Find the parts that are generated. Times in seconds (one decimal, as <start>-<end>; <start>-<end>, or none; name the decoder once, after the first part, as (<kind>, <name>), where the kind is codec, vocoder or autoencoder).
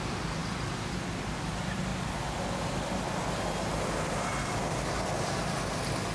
none